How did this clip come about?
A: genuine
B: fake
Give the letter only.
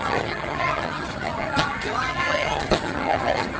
B